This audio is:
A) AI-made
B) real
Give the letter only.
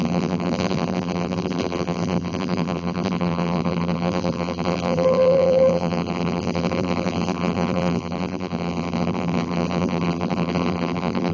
A